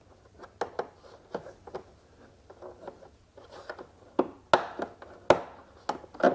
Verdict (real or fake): real